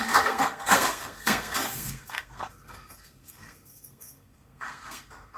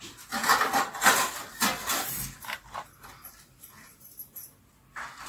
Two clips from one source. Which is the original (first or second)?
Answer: second